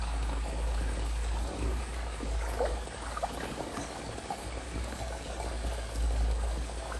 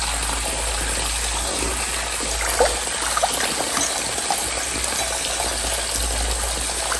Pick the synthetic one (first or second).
first